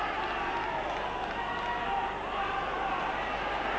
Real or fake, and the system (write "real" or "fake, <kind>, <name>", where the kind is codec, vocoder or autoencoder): real